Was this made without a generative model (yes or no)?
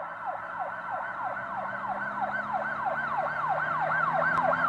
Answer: yes